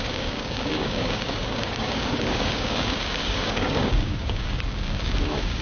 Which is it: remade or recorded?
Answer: remade